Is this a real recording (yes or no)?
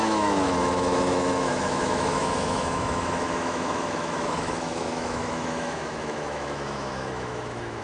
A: no